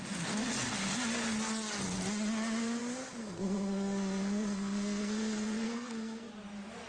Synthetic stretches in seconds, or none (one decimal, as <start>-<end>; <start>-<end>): 3.2-6.3